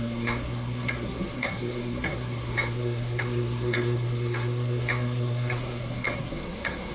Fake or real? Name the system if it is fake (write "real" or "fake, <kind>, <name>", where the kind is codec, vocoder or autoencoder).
fake, codec, SNAC